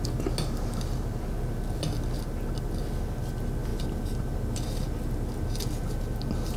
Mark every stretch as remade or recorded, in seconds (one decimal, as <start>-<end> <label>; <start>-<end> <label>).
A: 0.0-6.6 recorded